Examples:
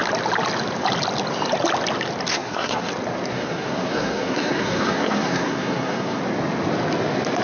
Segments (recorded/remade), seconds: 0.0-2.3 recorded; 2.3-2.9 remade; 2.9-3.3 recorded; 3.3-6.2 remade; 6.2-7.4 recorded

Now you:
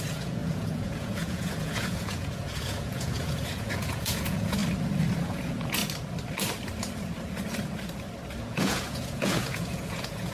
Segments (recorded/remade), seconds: 0.0-4.6 remade; 4.6-5.2 recorded; 5.2-5.8 remade; 5.8-8.4 recorded; 8.4-10.3 remade

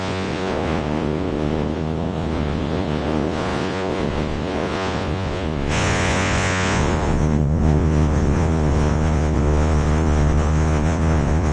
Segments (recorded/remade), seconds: 0.0-11.5 remade